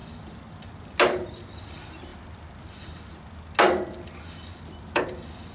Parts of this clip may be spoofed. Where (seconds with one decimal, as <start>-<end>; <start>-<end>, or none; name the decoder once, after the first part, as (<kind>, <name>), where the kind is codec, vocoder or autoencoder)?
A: none